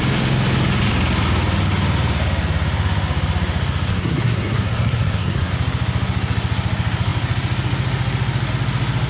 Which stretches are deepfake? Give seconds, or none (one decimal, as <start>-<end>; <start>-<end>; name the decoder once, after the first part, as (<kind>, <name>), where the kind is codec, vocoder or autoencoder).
3.9-5.5 (codec, SNAC)